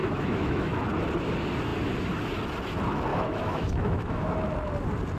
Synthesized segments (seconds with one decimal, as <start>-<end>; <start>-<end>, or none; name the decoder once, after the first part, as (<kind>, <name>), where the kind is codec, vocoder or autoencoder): 0.0-0.8 (autoencoder, DAC-VAE); 3.1-4.3